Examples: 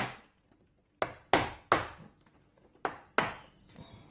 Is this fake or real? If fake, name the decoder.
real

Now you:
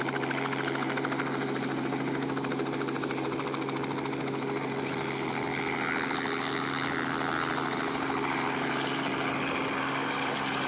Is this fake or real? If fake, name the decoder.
real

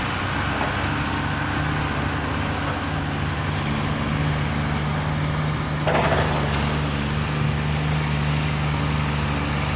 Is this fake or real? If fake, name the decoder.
real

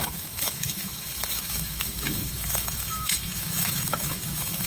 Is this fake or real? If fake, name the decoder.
fake, autoencoder, DAC-VAE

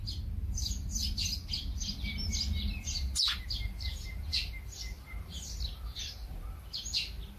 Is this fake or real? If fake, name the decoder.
real